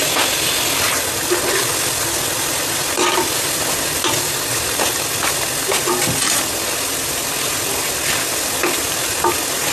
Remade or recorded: recorded